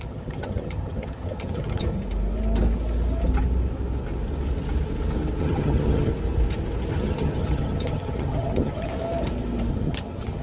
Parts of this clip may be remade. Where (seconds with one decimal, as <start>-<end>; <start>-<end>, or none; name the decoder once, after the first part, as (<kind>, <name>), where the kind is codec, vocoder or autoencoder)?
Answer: 0.0-1.9 (vocoder, HiFi-GAN); 5.4-6.1; 6.9-8.9; 9.7-10.4